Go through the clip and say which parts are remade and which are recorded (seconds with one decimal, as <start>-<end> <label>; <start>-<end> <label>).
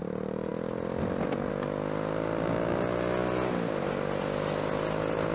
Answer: 0.0-5.3 recorded